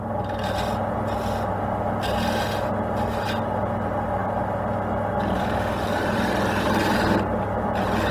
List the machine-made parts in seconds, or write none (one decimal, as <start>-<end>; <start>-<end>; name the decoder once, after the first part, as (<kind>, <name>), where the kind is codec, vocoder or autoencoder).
none